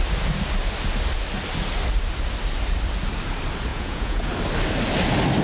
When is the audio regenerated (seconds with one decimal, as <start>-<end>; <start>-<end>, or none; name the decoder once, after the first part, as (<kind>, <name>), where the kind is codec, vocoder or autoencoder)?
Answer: 3.7-4.3 (vocoder, Vocos)